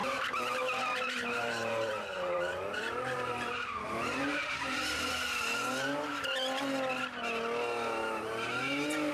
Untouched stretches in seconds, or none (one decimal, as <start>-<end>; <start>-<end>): 5.1-9.1